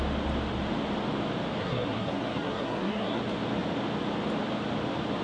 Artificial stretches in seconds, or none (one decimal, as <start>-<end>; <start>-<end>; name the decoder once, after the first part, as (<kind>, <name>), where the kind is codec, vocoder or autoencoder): 1.6-3.2 (codec, SNAC)